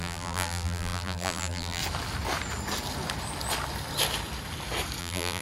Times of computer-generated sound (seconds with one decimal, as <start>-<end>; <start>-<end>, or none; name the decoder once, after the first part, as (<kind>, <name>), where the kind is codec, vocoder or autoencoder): 0.0-1.8 (vocoder, BigVGAN v2); 5.0-5.4